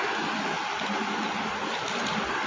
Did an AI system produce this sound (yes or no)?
no